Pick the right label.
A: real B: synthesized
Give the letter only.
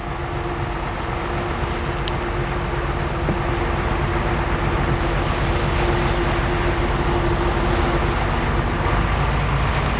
A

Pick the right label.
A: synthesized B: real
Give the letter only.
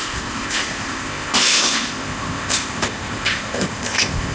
A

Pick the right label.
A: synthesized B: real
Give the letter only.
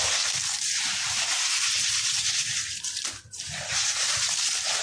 B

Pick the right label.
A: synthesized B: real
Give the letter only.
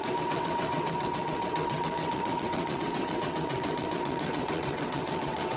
A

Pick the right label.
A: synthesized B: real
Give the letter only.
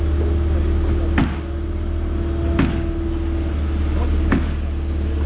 B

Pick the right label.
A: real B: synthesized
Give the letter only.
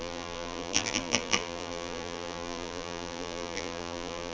B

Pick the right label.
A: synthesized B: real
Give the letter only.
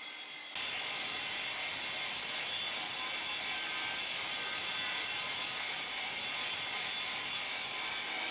B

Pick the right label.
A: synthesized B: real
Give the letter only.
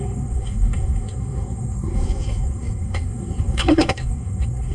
A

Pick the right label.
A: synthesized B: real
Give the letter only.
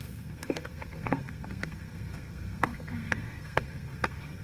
A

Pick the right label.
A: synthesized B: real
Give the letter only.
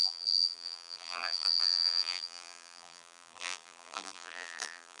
A